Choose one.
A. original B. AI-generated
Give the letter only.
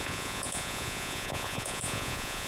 B